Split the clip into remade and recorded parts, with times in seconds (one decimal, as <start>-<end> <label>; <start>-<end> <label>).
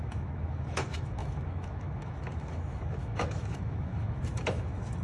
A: 0.0-5.0 remade